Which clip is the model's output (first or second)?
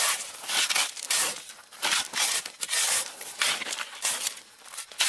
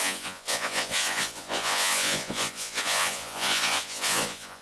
second